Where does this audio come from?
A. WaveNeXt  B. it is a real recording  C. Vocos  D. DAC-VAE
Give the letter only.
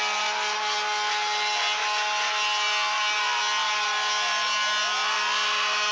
B